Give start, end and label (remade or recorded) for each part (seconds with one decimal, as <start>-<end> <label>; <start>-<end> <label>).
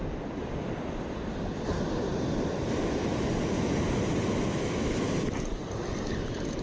0.0-6.6 recorded